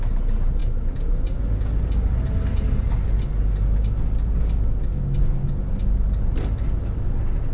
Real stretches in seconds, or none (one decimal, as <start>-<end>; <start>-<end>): 0.0-7.5